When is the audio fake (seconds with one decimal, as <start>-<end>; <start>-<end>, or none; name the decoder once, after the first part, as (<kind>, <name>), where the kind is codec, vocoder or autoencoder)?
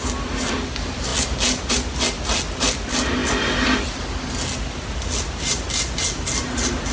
none